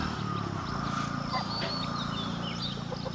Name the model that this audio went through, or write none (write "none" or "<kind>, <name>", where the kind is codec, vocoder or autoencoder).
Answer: none